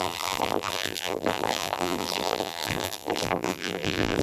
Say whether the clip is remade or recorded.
remade